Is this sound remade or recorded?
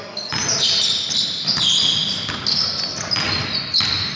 recorded